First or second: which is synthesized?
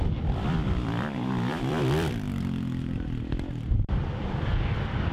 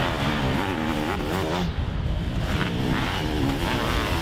first